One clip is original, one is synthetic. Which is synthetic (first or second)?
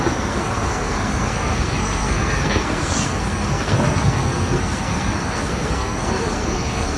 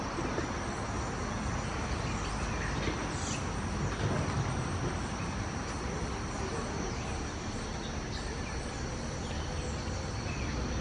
first